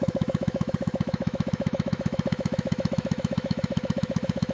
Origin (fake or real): fake